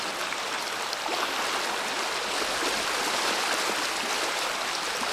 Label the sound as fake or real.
real